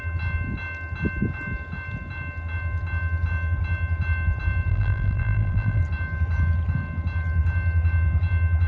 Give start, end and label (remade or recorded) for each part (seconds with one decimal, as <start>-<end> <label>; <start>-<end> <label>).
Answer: 0.0-4.7 recorded; 4.7-5.8 remade; 5.8-8.7 recorded